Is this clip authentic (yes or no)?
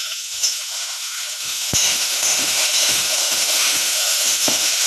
no